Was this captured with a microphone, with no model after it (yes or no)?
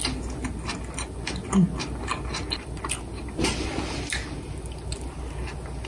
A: yes